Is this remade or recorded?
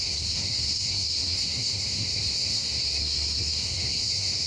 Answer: remade